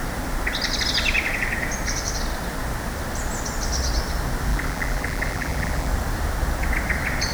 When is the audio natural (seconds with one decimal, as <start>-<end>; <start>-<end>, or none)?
0.0-4.5; 5.9-7.3